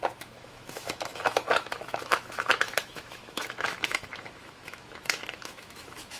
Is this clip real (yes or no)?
no